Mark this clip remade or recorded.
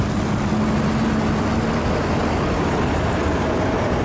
recorded